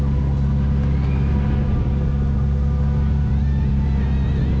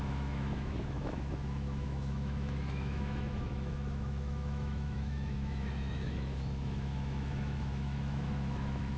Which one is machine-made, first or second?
second